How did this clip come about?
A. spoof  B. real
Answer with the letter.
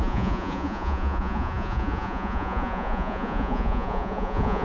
A